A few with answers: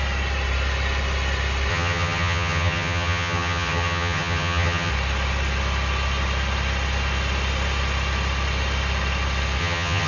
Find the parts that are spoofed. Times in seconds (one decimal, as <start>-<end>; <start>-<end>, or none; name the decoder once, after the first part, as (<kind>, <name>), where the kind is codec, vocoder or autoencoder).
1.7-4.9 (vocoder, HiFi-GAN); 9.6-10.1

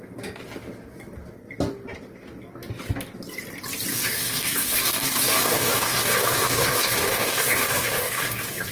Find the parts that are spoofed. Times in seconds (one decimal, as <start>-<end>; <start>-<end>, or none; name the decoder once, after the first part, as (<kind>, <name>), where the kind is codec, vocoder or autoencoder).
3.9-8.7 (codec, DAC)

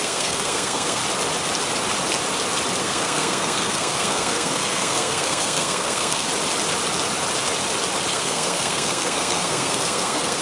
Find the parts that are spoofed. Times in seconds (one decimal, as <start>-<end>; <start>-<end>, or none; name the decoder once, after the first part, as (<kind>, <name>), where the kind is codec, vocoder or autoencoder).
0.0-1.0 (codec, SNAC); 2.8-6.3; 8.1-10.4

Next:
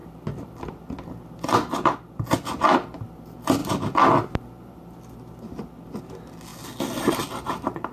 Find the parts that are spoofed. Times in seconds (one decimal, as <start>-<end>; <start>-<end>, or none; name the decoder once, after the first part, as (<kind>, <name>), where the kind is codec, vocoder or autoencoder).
0.0-0.6 (vocoder, BigVGAN v2)

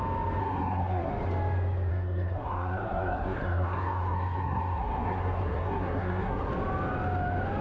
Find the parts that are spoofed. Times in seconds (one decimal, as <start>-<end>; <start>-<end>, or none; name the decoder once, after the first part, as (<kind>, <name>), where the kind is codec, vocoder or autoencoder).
0.4-1.1 (codec, SNAC); 1.9-6.5

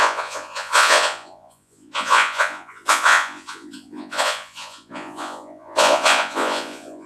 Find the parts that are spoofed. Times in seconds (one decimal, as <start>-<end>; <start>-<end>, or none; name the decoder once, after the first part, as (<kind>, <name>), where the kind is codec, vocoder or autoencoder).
0.0-7.1 (vocoder, Vocos)

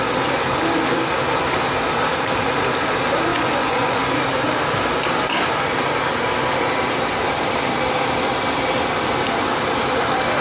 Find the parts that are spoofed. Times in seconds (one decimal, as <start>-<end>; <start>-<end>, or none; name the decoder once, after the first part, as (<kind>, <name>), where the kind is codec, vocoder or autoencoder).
3.3-4.0 (vocoder, Vocos)